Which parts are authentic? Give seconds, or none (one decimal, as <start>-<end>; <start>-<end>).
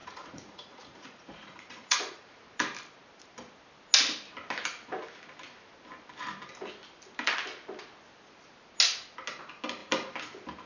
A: 2.3-10.7